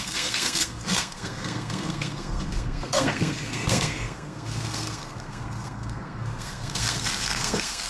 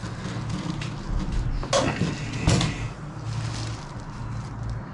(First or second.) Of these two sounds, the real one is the second